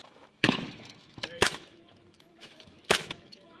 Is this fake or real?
fake